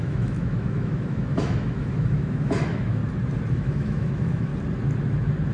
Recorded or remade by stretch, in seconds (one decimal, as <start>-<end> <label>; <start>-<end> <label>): 0.0-3.0 remade; 3.0-3.5 recorded; 3.5-4.5 remade; 4.5-5.5 recorded